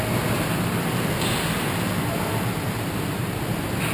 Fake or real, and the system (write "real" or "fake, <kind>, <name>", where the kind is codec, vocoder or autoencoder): fake, vocoder, BigVGAN v2